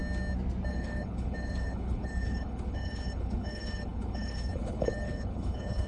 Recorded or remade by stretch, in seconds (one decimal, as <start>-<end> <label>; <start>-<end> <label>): 0.0-0.7 recorded; 0.7-5.9 remade